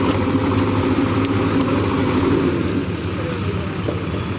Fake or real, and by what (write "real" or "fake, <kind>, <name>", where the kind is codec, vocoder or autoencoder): real